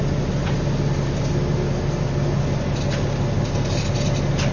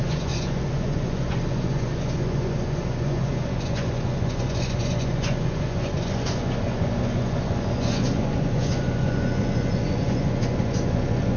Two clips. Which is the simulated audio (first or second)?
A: second